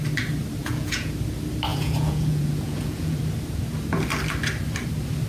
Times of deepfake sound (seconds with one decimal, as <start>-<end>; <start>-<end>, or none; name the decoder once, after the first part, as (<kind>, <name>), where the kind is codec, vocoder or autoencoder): 0.6-1.1 (vocoder, Vocos); 1.7-3.2